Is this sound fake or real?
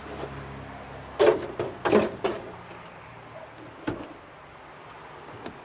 real